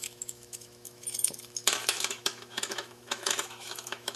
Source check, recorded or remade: remade